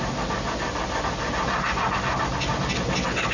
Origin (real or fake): real